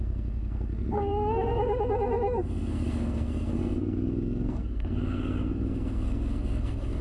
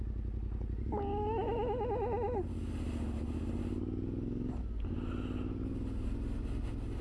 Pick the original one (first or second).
second